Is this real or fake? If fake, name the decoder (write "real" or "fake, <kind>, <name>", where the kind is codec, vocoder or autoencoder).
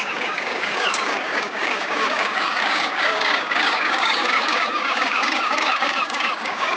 fake, codec, DAC